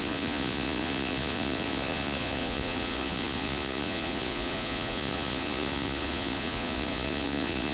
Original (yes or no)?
no